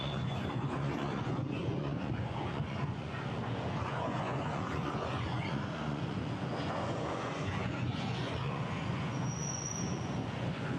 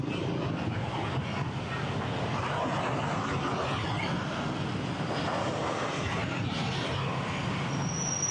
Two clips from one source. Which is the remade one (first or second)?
first